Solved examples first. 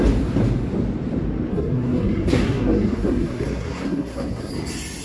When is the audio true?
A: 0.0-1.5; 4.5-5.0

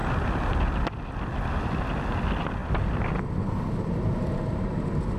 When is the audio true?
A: 0.0-2.6; 4.4-5.2

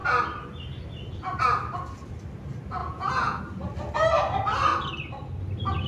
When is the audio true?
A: 0.0-2.8; 3.4-5.9

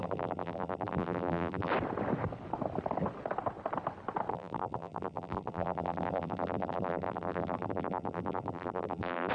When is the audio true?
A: 1.7-4.3